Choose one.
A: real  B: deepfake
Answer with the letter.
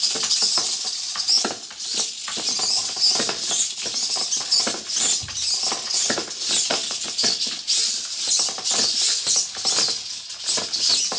A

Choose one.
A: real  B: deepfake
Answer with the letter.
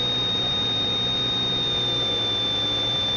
A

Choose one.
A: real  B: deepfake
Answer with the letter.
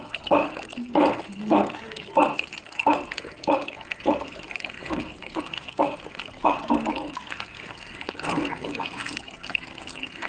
B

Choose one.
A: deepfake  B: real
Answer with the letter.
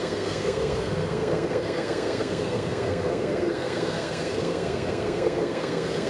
A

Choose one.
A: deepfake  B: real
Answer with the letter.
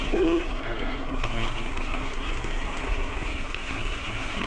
A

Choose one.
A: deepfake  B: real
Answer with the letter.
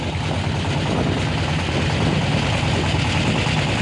B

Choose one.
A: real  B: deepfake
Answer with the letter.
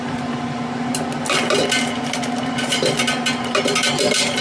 A